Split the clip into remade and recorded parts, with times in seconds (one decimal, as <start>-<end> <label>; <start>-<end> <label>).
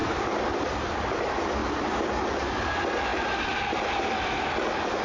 0.0-0.7 remade; 0.7-1.6 recorded; 1.6-2.1 remade; 2.1-5.0 recorded